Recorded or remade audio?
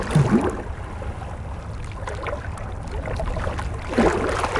recorded